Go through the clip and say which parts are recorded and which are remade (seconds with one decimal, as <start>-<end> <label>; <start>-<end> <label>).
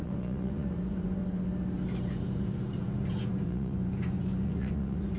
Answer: 0.0-1.2 remade; 1.2-2.1 recorded; 2.1-5.2 remade